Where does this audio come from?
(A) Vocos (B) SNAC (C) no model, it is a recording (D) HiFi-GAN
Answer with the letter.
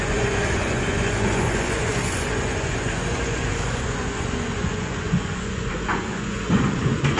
A